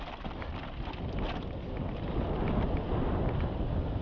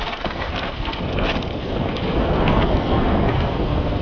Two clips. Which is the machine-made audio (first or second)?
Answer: second